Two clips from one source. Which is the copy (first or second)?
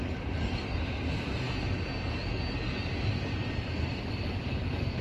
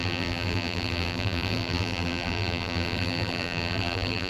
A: second